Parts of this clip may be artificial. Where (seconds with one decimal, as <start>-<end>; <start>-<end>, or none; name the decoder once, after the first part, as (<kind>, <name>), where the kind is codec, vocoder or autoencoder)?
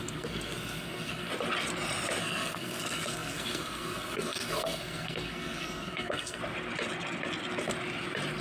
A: 0.0-1.3 (codec, SNAC); 2.2-6.4